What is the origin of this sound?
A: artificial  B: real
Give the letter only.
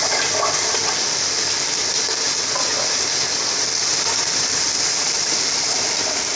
B